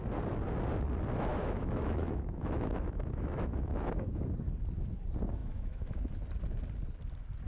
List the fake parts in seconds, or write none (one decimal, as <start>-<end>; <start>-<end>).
1.3-4.2; 5.4-6.0